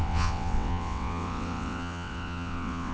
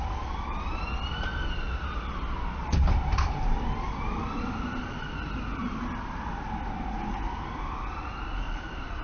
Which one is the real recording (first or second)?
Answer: second